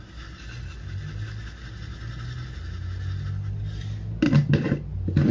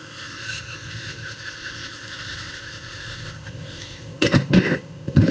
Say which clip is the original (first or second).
first